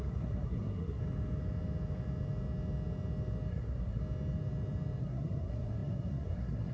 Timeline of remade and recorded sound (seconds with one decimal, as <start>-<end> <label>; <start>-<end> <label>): 0.0-1.0 remade; 1.0-3.5 recorded; 3.5-4.0 remade; 4.0-5.0 recorded; 5.0-6.7 remade